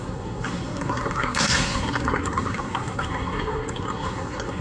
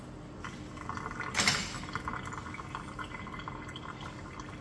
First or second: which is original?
second